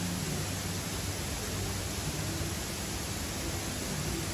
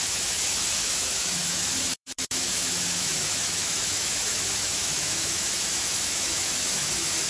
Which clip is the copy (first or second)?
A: second